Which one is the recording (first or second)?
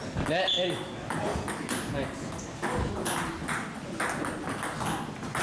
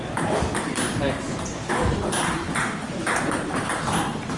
first